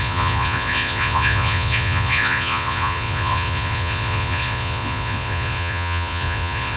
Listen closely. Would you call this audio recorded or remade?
remade